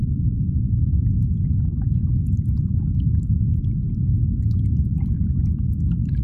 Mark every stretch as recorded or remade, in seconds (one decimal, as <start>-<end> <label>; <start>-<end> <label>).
0.0-2.1 remade; 2.1-2.7 recorded; 2.7-3.9 remade; 3.9-6.2 recorded